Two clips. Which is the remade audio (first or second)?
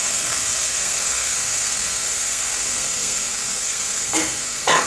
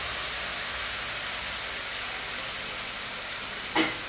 first